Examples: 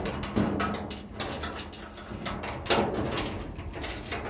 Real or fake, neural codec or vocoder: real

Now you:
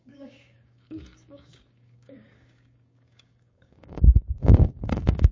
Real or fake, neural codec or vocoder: fake, codec, DAC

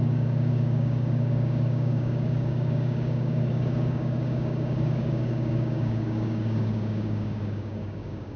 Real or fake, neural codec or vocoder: fake, codec, DAC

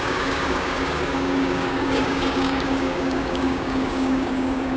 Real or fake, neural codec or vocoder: fake, codec, DAC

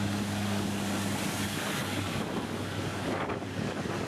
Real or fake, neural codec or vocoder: fake, codec, DAC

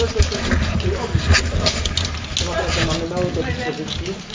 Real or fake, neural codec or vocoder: real